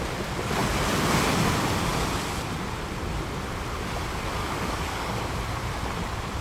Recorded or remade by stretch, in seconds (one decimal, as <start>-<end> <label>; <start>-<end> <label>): 0.0-4.4 recorded; 4.4-5.2 remade; 5.2-6.4 recorded

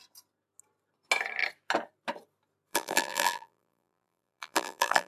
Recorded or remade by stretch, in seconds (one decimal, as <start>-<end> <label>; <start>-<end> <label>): 0.0-2.7 recorded; 2.7-5.1 remade

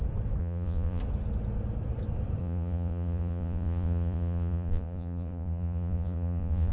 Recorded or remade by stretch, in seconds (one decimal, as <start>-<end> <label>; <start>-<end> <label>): 0.0-0.4 recorded; 0.4-1.0 remade; 1.0-2.4 recorded; 2.4-6.7 remade

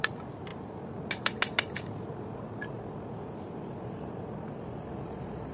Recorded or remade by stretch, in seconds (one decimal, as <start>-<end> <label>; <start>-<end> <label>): 0.0-5.5 recorded

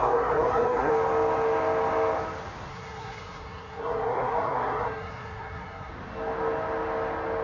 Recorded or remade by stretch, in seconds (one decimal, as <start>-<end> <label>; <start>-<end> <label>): 0.0-0.9 remade; 0.9-2.7 recorded; 2.7-5.9 remade; 5.9-7.4 recorded

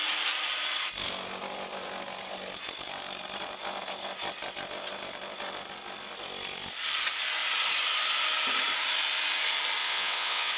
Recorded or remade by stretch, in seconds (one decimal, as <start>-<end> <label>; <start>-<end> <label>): 0.0-9.8 recorded; 9.8-10.6 remade

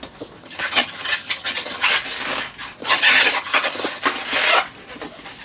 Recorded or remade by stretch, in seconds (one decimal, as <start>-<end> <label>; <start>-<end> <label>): 0.0-0.4 recorded; 0.4-1.9 remade; 1.9-2.8 recorded; 2.8-4.0 remade; 4.0-5.4 recorded